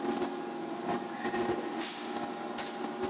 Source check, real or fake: real